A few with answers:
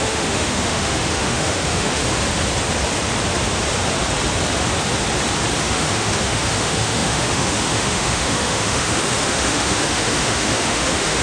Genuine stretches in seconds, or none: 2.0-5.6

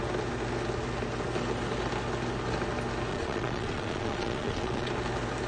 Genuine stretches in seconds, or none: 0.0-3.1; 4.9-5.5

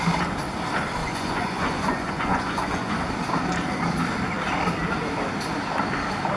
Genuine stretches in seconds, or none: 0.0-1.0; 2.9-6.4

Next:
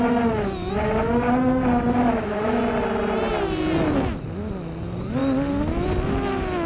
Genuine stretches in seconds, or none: 0.0-2.1; 2.6-6.7